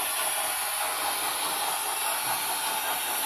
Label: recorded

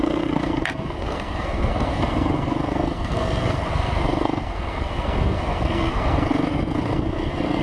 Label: remade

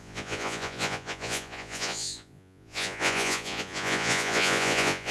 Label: remade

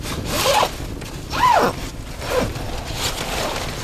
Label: recorded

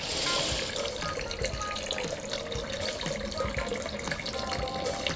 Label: recorded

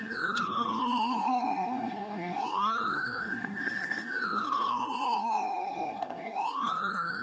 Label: remade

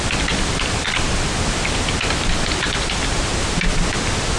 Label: recorded